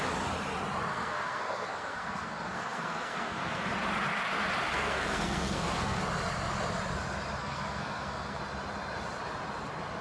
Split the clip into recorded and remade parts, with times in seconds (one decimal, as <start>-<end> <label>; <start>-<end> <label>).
0.0-0.9 recorded; 0.9-3.7 remade; 3.7-4.7 recorded; 4.7-6.0 remade; 6.0-7.4 recorded; 7.4-8.4 remade; 8.4-10.0 recorded